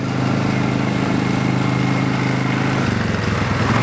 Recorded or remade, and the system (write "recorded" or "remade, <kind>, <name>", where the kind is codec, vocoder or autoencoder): recorded